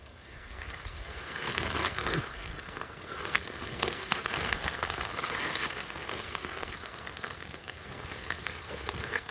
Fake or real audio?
fake